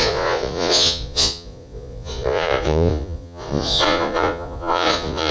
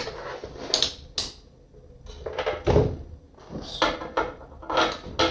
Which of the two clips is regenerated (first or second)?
first